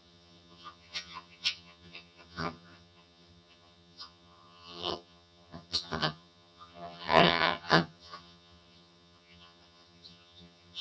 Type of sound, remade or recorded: remade